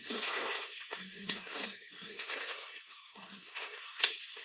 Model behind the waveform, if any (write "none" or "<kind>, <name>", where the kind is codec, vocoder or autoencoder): codec, SNAC